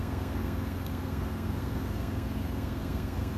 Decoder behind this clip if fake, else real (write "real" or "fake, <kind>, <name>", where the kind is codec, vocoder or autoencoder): fake, codec, SNAC